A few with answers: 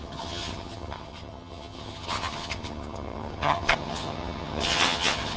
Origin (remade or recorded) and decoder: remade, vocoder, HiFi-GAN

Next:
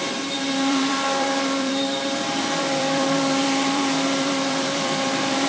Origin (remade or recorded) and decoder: remade, vocoder, BigVGAN v2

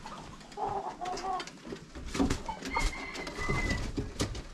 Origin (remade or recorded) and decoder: recorded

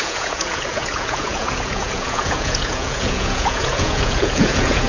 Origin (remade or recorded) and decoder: remade, vocoder, Vocos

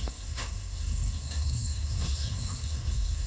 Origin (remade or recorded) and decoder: remade, codec, SNAC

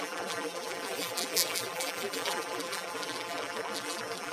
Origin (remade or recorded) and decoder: remade, vocoder, BigVGAN v2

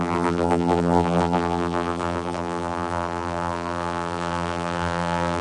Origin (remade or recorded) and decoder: remade, vocoder, BigVGAN v2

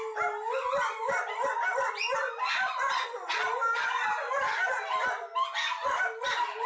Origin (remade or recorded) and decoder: recorded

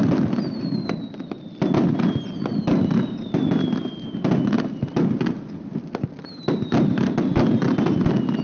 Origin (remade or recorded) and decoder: recorded